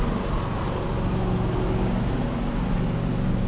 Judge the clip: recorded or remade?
recorded